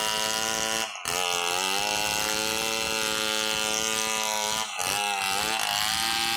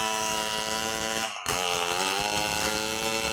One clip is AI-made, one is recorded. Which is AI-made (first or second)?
second